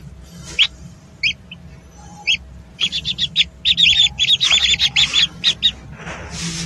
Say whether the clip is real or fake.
real